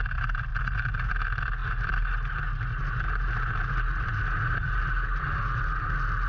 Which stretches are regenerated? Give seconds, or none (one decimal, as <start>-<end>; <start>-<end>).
none